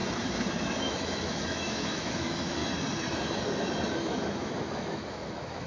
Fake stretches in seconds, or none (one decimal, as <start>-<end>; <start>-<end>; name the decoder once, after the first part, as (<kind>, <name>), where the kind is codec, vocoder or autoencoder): 0.7-2.6 (autoencoder, DAC-VAE); 3.9-5.7